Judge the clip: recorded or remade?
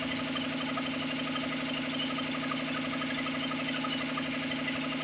recorded